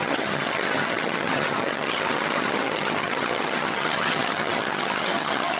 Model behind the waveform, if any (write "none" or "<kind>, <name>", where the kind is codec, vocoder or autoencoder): vocoder, HiFi-GAN